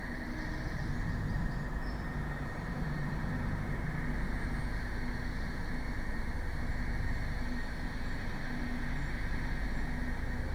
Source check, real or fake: real